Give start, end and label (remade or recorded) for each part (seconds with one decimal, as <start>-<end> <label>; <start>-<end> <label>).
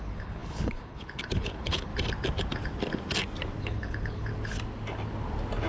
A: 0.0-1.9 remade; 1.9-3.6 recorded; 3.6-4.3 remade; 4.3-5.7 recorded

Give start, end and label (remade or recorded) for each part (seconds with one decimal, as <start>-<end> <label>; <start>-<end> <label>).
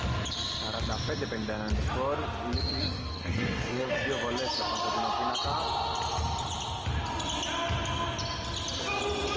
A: 0.0-2.8 recorded; 2.8-3.9 remade; 3.9-9.4 recorded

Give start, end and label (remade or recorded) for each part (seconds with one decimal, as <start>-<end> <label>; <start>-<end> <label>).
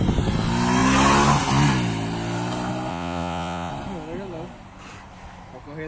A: 0.0-2.9 recorded; 2.9-3.7 remade; 3.7-5.9 recorded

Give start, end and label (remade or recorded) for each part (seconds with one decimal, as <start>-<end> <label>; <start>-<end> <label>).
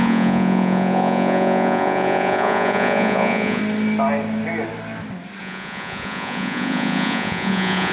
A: 0.0-3.6 remade; 3.6-5.4 recorded; 5.4-7.9 remade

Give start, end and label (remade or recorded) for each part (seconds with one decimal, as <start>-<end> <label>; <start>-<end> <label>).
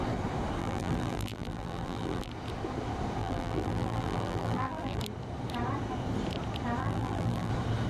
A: 0.0-0.6 recorded; 0.6-2.3 remade; 2.3-3.2 recorded; 3.2-5.0 remade; 5.0-6.8 recorded; 6.8-7.5 remade; 7.5-7.9 recorded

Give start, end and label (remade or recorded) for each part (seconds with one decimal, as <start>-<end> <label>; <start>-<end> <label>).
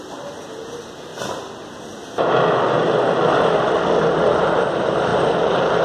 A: 0.0-5.1 recorded; 5.1-5.8 remade